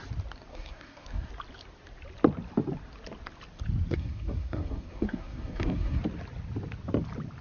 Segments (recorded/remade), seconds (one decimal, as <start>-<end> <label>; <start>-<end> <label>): 0.0-0.5 recorded; 0.5-1.3 remade; 1.3-3.9 recorded; 3.9-6.0 remade; 6.0-7.4 recorded